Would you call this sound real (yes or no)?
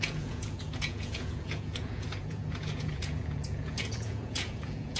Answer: no